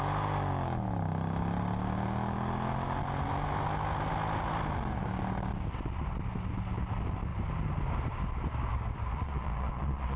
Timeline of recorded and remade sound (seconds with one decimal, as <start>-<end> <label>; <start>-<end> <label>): 0.0-9.1 recorded; 9.1-10.2 remade